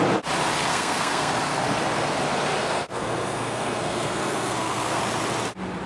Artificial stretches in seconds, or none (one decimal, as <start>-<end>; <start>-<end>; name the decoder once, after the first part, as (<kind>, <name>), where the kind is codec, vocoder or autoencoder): 0.7-1.3 (codec, SNAC); 2.6-5.0